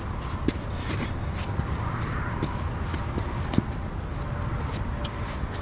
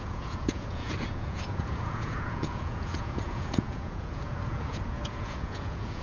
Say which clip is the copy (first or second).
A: second